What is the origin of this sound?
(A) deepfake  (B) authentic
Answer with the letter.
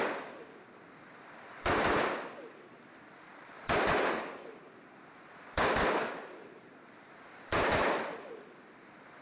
B